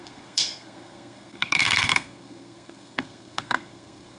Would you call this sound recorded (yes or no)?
no